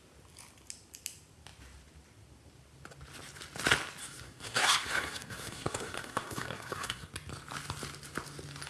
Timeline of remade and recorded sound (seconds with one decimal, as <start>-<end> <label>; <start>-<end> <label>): 0.0-4.0 recorded; 4.0-7.1 remade; 7.1-8.7 recorded